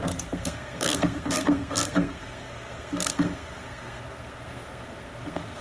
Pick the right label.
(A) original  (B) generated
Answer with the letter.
B